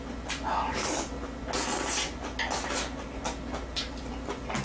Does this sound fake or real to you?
real